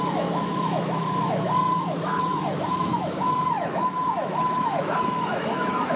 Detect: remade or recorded remade